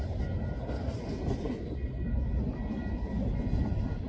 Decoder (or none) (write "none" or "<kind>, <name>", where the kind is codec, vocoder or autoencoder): none